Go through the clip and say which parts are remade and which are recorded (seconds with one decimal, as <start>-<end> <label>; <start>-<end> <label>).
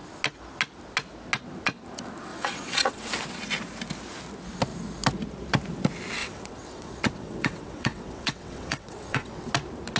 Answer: 0.0-2.3 recorded; 2.3-3.1 remade; 3.1-6.2 recorded; 6.2-9.5 remade; 9.5-10.0 recorded